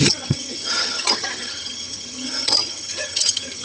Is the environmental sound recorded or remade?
remade